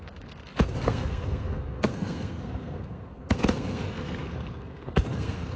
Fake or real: fake